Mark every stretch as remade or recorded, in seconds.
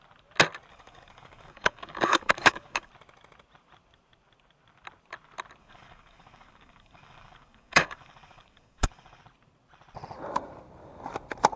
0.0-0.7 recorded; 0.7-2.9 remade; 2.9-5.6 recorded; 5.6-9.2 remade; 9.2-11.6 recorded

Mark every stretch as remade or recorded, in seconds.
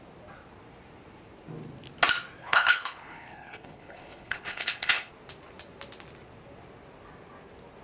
0.0-2.4 recorded; 2.4-5.1 remade; 5.1-7.8 recorded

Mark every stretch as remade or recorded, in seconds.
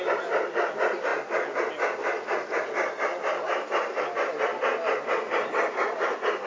0.0-6.5 recorded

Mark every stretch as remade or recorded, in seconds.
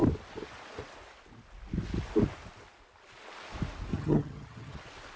0.0-3.9 recorded; 3.9-4.8 remade; 4.8-5.2 recorded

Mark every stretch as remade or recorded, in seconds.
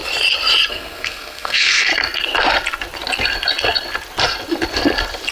0.0-0.7 recorded; 0.7-1.9 remade; 1.9-5.3 recorded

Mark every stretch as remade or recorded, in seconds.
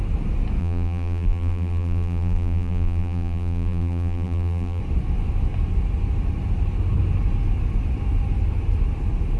0.0-0.6 recorded; 0.6-4.8 remade; 4.8-9.4 recorded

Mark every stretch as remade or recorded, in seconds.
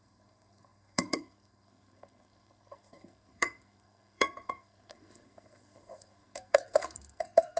0.0-7.6 remade